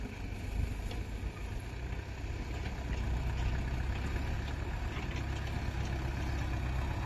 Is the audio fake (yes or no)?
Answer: no